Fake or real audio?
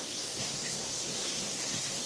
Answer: fake